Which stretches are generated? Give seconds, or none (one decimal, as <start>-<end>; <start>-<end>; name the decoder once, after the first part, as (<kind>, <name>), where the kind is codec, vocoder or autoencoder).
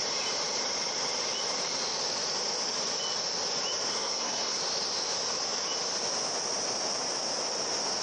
3.9-4.6 (codec, SNAC)